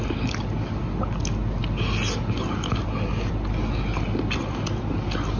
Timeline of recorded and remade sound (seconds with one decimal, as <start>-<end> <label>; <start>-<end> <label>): 0.0-5.4 recorded